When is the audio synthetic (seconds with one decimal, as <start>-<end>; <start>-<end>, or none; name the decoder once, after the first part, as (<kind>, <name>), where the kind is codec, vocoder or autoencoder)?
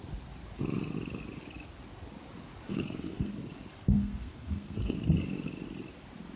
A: 2.7-3.3 (codec, SNAC); 3.7-5.1